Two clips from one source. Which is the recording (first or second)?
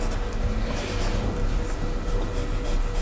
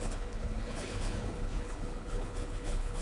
first